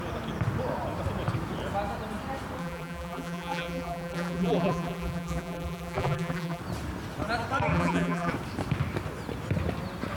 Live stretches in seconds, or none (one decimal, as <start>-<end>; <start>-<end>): 0.0-2.6; 6.6-7.7; 8.3-10.2